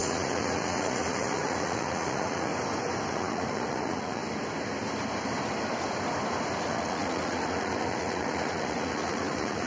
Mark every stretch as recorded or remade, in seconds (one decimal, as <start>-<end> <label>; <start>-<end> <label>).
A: 0.0-2.5 remade; 2.5-3.1 recorded; 3.1-4.2 remade; 4.2-6.6 recorded; 6.6-9.7 remade

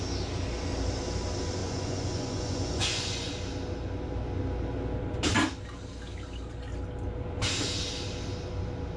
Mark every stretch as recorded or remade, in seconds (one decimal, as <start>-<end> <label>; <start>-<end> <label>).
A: 0.0-1.6 recorded; 1.6-3.3 remade; 3.3-9.0 recorded

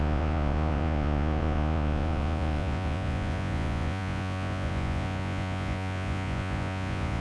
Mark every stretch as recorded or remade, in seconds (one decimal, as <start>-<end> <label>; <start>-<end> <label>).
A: 0.0-7.2 remade

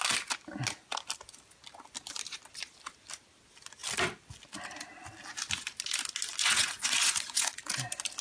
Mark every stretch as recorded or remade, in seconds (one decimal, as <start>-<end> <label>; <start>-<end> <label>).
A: 0.0-6.4 recorded; 6.4-7.5 remade; 7.5-8.2 recorded

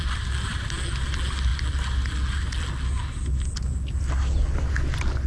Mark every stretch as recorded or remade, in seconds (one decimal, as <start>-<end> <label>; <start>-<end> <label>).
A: 0.0-5.3 recorded

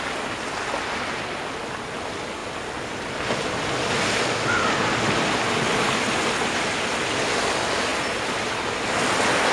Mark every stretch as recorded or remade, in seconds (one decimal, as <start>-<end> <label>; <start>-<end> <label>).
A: 0.0-9.5 recorded

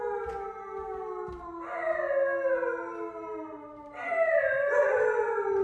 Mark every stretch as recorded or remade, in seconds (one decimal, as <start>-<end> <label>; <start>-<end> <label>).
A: 0.0-5.6 recorded

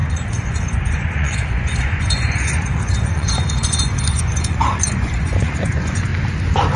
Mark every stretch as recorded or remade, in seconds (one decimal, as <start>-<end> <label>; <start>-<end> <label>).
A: 0.0-6.1 remade; 6.1-6.8 recorded